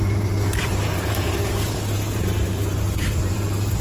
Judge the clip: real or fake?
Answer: fake